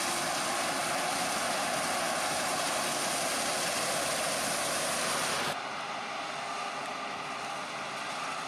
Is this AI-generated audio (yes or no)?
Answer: no